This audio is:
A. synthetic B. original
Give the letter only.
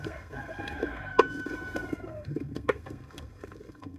A